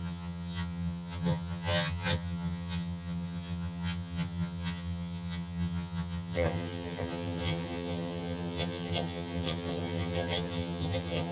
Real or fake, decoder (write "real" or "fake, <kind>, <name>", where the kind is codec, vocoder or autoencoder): fake, vocoder, HiFi-GAN